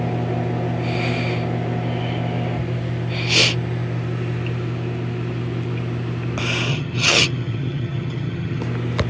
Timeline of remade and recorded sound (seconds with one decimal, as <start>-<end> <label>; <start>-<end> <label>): 0.0-6.7 recorded; 6.7-8.6 remade; 8.6-9.1 recorded